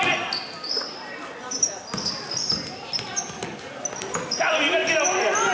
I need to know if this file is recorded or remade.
recorded